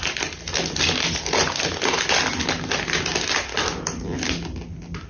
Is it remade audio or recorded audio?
recorded